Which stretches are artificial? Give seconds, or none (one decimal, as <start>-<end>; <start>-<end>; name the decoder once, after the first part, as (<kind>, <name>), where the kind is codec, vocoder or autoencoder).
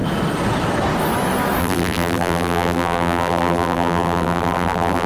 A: 1.6-5.1 (vocoder, BigVGAN v2)